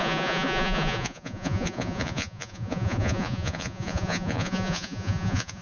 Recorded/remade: remade